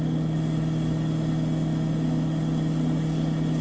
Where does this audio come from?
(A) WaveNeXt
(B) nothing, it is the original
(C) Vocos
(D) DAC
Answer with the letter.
B